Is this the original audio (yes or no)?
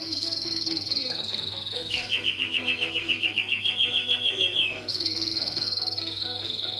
no